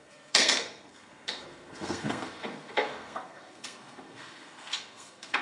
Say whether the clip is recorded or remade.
remade